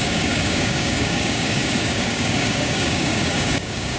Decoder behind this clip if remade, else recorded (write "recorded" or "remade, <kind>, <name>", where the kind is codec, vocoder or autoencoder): remade, codec, DAC